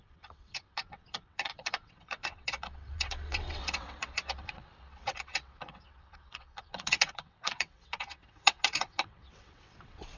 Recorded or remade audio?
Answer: remade